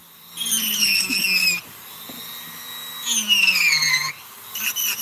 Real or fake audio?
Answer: real